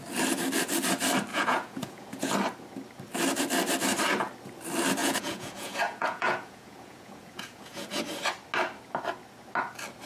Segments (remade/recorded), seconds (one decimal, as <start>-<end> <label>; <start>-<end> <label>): 0.0-1.3 recorded; 1.3-2.3 remade; 2.3-5.0 recorded; 5.0-8.0 remade; 8.0-10.1 recorded

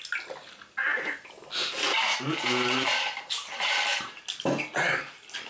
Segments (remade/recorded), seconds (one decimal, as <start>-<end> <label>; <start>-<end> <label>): 0.0-0.9 recorded; 0.9-4.2 remade; 4.2-5.5 recorded

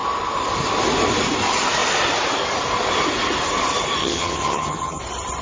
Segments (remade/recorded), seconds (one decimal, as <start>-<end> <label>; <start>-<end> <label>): 0.0-4.0 recorded; 4.0-5.0 remade; 5.0-5.4 recorded

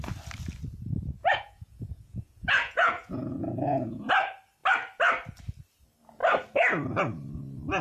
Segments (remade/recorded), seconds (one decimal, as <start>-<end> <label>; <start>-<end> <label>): 0.0-1.2 recorded; 1.2-4.1 remade; 4.1-7.8 recorded

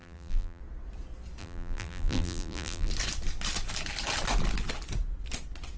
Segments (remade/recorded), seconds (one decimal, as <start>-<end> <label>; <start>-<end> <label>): 0.0-0.6 remade; 0.6-1.4 recorded; 1.4-2.9 remade; 2.9-5.8 recorded

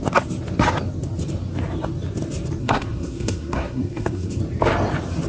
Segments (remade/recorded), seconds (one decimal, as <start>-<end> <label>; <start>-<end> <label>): 0.0-2.6 recorded; 2.6-4.4 remade; 4.4-5.3 recorded

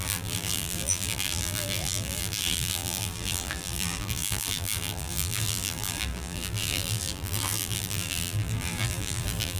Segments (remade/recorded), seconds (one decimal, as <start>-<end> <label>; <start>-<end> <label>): 0.0-9.6 remade

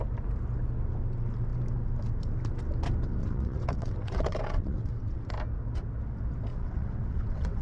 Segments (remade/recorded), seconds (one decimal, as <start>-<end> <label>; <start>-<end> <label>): 0.0-3.2 recorded; 3.2-5.3 remade; 5.3-6.5 recorded; 6.5-7.6 remade